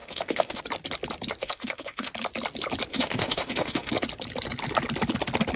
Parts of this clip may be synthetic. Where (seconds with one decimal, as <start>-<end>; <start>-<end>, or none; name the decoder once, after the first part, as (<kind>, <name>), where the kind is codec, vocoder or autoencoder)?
0.0-0.6 (autoencoder, DAC-VAE); 1.4-2.1; 2.9-3.9